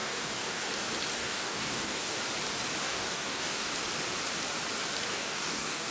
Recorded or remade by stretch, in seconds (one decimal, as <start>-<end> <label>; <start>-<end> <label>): 0.0-0.6 remade; 0.6-1.2 recorded; 1.2-2.2 remade; 2.2-2.8 recorded; 2.8-3.7 remade; 3.7-5.1 recorded; 5.1-5.9 remade